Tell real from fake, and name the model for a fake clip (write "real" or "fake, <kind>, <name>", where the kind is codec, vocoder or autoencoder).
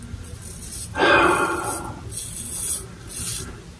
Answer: real